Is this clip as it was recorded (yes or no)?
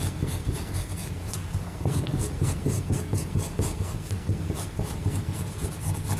no